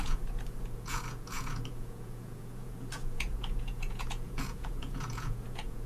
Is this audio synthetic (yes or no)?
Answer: yes